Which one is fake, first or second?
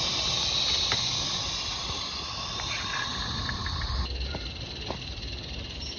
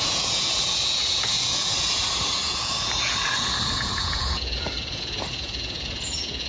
second